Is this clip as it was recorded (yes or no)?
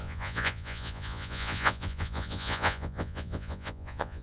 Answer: no